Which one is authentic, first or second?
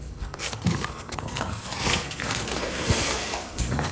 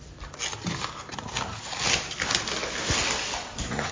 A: second